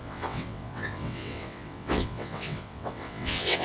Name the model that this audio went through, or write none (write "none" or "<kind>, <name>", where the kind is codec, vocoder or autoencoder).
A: vocoder, WaveNeXt